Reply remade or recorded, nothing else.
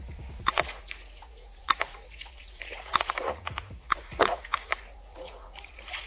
remade